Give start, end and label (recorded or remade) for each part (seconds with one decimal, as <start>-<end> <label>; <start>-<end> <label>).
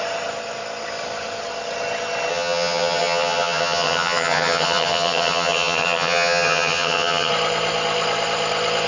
0.0-2.3 recorded; 2.3-7.3 remade; 7.3-8.9 recorded